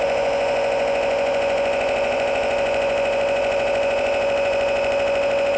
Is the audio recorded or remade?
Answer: remade